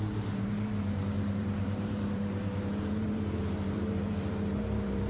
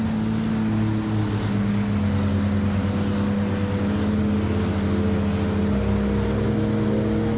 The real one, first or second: second